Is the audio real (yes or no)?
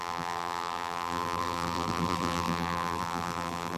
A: no